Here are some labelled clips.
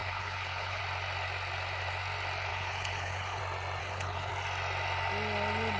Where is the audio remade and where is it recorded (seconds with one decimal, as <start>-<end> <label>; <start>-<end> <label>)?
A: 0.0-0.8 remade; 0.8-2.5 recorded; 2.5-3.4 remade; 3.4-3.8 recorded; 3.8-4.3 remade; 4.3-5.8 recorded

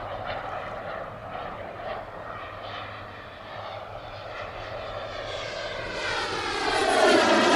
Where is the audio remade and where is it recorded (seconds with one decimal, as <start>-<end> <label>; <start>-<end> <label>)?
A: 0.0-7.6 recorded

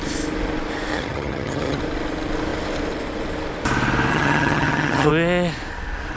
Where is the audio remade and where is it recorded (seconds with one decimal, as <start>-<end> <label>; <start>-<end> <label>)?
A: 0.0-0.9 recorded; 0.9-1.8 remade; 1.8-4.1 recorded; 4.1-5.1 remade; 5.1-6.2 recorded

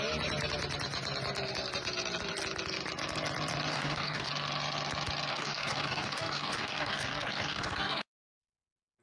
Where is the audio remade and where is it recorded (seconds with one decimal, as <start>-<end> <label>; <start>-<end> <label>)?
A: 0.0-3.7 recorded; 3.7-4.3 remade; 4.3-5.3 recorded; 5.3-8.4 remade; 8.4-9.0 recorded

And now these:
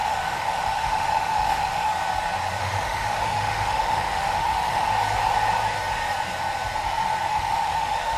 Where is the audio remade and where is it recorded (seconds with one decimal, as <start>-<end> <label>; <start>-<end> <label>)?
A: 0.0-1.9 remade; 1.9-2.6 recorded; 2.6-4.9 remade; 4.9-7.3 recorded; 7.3-8.2 remade